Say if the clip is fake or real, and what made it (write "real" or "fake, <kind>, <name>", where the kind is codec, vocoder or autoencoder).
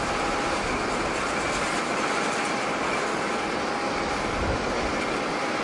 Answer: real